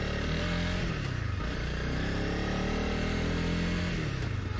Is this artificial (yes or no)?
no